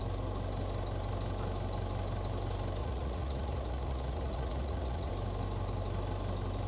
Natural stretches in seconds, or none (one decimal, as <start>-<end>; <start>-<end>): 0.0-2.8; 5.1-6.7